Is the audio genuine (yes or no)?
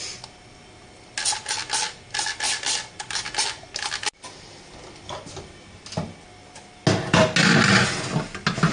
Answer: yes